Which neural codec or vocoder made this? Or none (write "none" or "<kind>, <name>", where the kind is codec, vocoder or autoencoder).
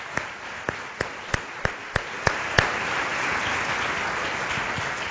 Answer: none